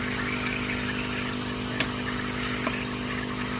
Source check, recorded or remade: recorded